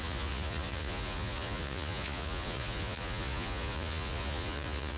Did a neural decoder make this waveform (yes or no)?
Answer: yes